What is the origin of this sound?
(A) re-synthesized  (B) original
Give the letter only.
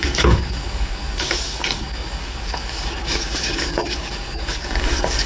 A